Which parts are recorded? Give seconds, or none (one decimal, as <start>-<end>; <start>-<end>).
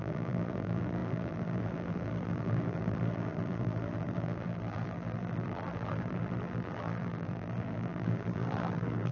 none